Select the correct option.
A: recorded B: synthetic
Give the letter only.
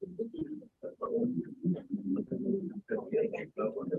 B